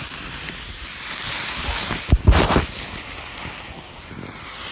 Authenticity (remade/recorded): recorded